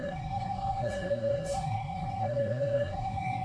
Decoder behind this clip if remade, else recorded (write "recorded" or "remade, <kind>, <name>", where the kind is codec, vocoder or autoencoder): remade, codec, SNAC